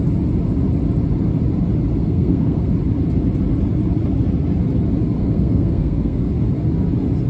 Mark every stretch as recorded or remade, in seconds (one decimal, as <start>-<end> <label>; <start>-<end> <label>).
0.0-2.0 recorded; 2.0-2.7 remade; 2.7-5.2 recorded; 5.2-6.3 remade; 6.3-7.3 recorded